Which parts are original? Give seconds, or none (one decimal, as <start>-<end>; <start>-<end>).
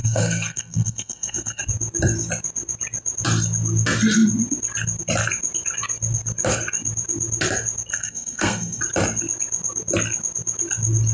1.6-7.9; 8.8-11.1